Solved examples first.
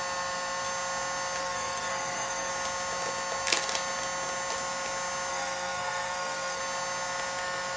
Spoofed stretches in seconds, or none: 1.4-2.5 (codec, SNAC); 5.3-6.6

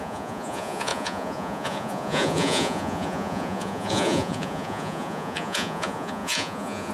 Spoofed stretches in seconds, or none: 0.0-6.9 (vocoder, Vocos)

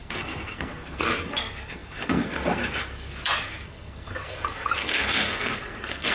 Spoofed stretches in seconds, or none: 0.0-6.1 (codec, SNAC)

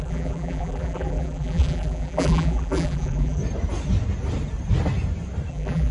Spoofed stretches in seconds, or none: 0.0-3.4 (vocoder, BigVGAN v2); 5.5-5.9

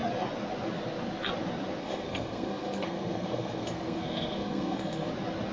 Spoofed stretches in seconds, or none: 1.8-5.1 (codec, SNAC)

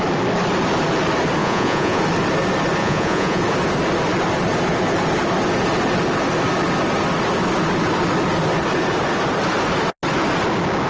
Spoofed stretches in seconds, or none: 1.4-2.0 (vocoder, Vocos); 2.8-3.4

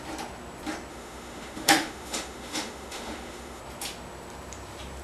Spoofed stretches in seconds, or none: 0.9-3.6 (autoencoder, DAC-VAE)